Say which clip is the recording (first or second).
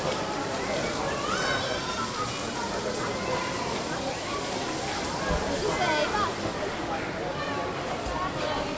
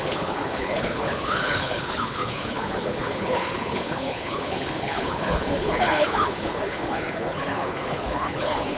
first